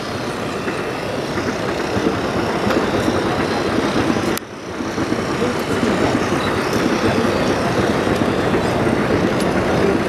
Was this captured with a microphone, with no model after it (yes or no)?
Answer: yes